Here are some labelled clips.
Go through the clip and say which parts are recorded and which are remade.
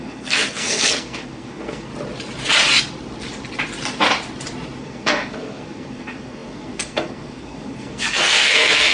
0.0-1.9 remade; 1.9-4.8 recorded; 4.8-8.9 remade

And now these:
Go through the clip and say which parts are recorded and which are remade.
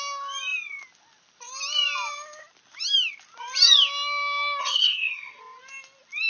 0.0-4.6 recorded; 4.6-5.4 remade; 5.4-6.3 recorded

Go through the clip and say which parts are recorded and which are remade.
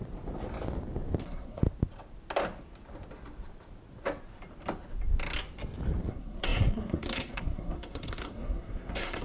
0.0-1.2 recorded; 1.2-1.6 remade; 1.6-6.1 recorded; 6.1-9.2 remade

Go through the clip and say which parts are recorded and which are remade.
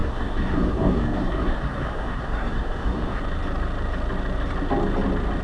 0.0-3.2 remade; 3.2-5.4 recorded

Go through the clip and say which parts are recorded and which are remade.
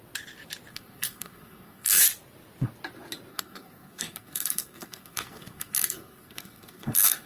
0.0-0.7 recorded; 0.7-2.0 remade; 2.0-3.3 recorded; 3.3-7.3 remade